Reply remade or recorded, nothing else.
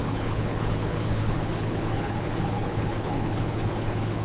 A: remade